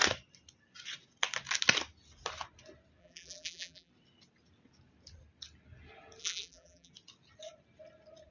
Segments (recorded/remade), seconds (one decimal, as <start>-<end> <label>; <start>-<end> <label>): 0.0-3.0 recorded; 3.0-3.9 remade; 3.9-6.2 recorded; 6.2-6.9 remade; 6.9-8.3 recorded